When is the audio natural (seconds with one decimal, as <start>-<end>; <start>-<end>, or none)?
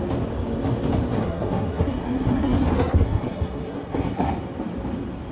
0.0-1.1; 4.3-5.3